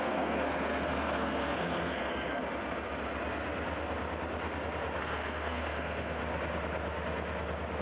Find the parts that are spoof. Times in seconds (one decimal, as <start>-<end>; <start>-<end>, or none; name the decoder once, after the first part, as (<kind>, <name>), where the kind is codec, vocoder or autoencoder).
0.0-2.4 (codec, SNAC); 5.0-6.2